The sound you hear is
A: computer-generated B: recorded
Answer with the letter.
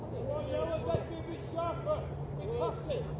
B